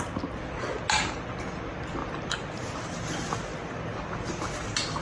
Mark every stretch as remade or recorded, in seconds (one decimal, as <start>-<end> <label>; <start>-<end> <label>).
0.0-5.0 recorded